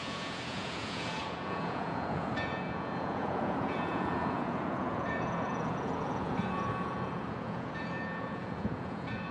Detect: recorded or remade remade